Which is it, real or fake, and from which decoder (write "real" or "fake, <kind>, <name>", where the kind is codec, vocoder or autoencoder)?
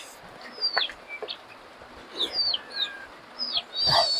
real